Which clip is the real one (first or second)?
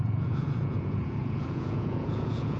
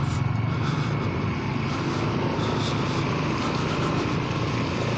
second